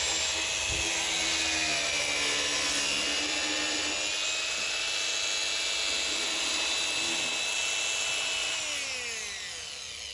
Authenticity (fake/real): real